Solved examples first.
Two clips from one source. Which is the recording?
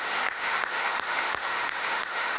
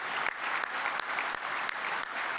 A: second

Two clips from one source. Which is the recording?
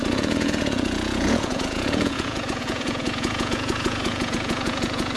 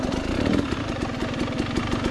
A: second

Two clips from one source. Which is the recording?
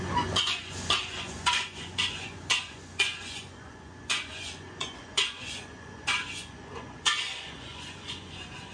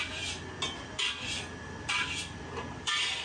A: second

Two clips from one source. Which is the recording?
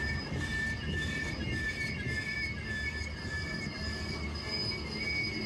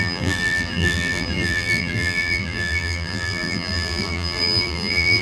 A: first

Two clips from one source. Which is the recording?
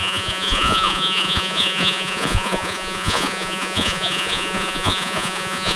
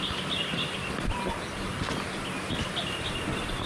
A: second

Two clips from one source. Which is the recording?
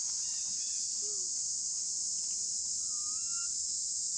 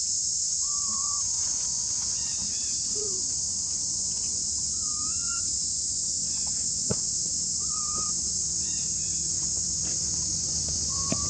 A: first